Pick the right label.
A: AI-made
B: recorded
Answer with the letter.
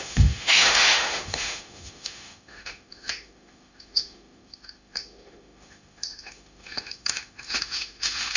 A